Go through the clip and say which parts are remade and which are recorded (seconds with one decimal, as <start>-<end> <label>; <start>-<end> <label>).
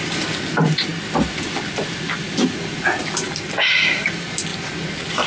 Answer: 0.0-5.3 recorded